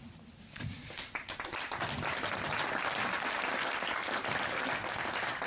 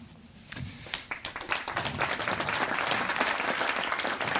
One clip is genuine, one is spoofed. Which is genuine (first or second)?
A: first